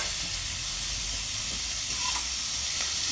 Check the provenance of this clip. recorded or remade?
recorded